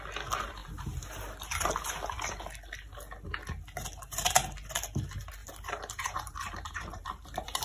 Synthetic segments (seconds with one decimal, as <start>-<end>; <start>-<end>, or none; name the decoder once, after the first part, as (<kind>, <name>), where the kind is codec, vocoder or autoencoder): 0.6-1.3 (vocoder, BigVGAN v2); 5.4-7.6